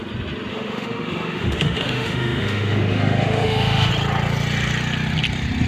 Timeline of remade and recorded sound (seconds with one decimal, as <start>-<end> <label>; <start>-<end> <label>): 0.0-0.5 recorded; 0.5-3.9 remade; 3.9-5.7 recorded